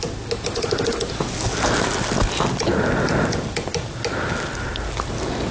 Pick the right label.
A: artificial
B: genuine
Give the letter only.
B